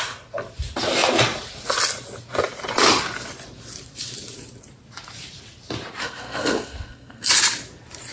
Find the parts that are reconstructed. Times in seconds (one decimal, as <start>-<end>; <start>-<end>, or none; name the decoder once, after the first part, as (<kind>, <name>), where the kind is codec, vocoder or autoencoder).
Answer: 6.0-7.3 (codec, SNAC)